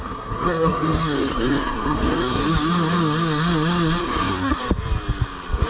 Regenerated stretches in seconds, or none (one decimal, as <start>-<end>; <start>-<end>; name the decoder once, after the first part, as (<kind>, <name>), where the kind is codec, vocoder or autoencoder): 0.0-2.4 (codec, SNAC); 4.0-4.6